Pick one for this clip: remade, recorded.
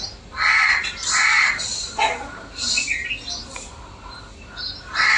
recorded